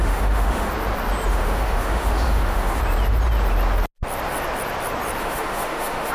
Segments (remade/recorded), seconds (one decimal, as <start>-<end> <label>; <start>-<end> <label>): 0.0-0.7 remade; 0.7-1.3 recorded; 1.3-2.8 remade; 2.8-5.2 recorded; 5.2-6.1 remade